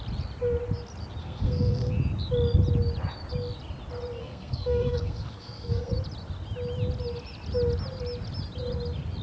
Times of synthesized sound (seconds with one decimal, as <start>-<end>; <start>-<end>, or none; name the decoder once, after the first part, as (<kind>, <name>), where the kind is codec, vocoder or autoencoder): 1.2-1.9 (codec, SNAC); 4.2-5.9